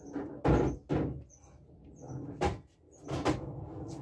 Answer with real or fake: real